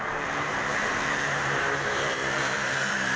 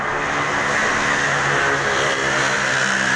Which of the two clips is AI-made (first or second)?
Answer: first